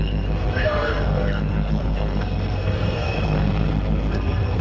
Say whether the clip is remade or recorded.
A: remade